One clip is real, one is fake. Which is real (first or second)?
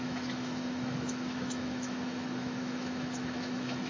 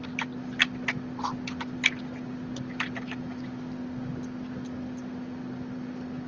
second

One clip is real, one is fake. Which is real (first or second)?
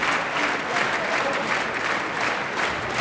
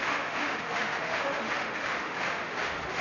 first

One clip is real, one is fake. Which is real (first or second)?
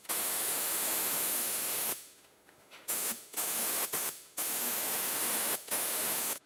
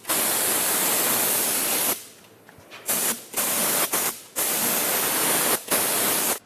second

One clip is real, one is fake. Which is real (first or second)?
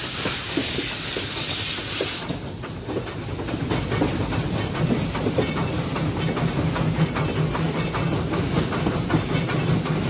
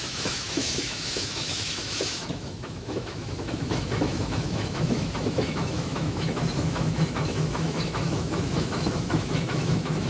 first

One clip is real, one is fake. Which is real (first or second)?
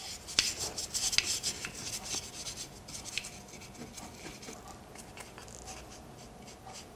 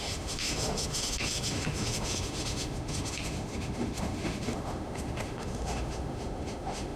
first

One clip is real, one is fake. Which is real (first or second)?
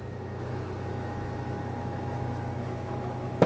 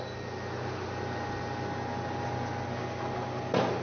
second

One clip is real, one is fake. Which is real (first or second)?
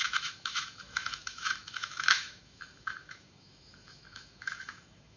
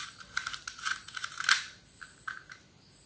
second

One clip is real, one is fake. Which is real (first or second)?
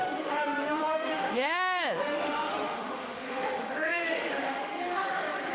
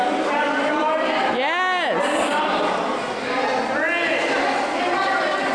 second